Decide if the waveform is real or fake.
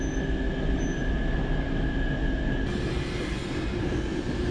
real